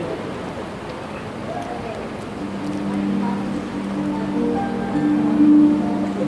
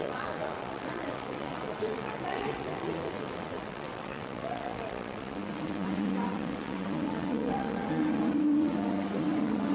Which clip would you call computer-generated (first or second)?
second